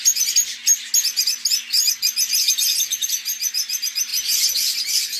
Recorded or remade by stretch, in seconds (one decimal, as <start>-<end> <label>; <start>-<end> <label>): 0.0-5.2 recorded